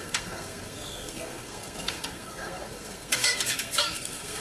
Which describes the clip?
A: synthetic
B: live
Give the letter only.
A